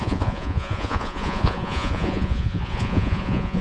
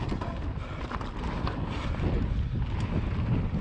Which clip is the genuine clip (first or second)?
second